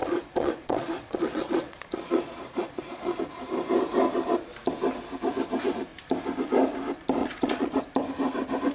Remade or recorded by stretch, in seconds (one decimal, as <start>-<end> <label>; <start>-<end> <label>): 0.0-3.2 remade; 3.2-7.2 recorded; 7.2-7.8 remade; 7.8-8.7 recorded